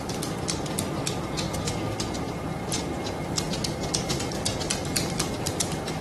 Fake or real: real